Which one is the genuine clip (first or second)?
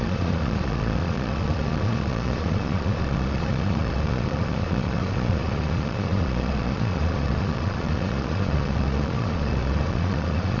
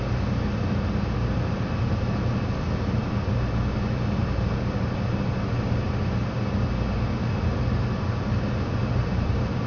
second